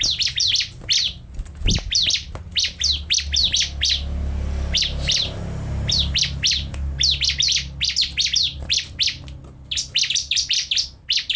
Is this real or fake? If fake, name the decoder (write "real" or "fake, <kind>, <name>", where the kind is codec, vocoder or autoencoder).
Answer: real